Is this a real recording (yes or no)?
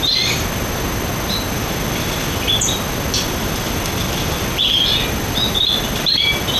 yes